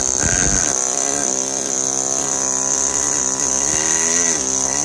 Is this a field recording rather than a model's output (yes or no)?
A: yes